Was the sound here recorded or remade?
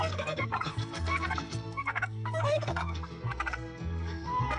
remade